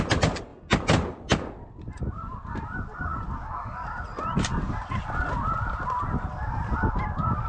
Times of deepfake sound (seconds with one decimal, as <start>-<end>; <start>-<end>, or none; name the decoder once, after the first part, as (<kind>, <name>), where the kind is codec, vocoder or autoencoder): none